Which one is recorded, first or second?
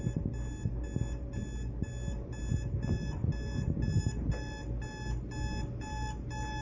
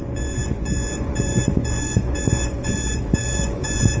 first